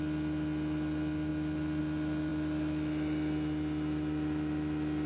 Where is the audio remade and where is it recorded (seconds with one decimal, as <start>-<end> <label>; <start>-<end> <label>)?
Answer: 0.0-5.1 recorded